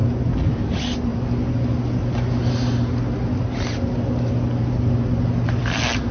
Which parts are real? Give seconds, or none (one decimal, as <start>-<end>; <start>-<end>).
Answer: 0.0-6.1